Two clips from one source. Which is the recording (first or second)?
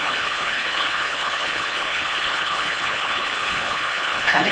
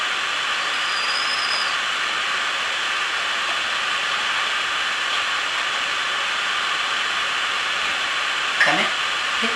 second